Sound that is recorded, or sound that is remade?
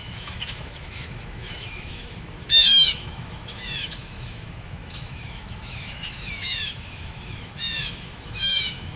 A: remade